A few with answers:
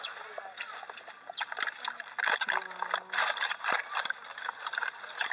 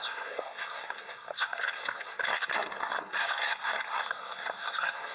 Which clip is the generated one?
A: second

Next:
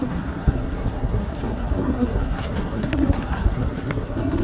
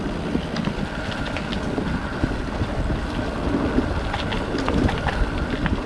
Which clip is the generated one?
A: first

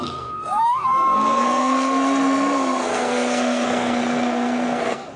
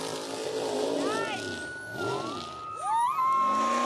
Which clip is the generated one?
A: first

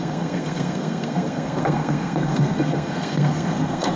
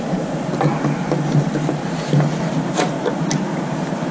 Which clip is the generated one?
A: first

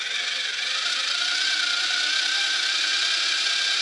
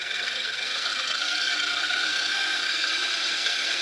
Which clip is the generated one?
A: second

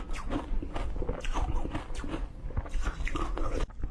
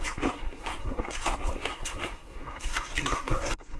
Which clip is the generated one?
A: second